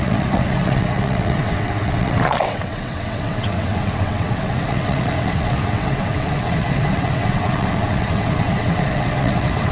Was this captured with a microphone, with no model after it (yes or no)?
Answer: no